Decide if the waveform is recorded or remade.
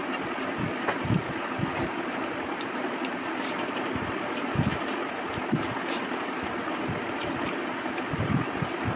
recorded